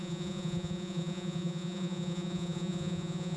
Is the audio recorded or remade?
remade